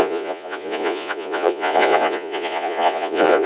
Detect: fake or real fake